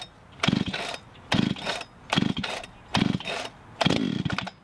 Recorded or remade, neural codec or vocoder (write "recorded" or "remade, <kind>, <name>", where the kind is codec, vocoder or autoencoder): recorded